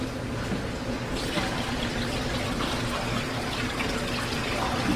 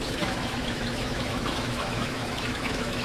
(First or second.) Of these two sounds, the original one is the first